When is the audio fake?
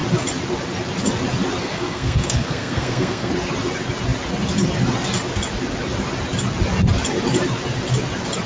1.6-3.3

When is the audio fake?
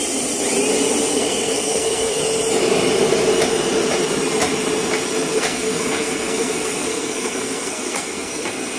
1.1-2.2; 5.3-8.8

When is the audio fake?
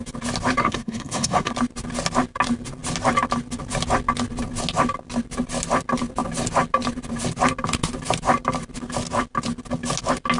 0.6-1.5